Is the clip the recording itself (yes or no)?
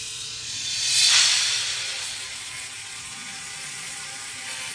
no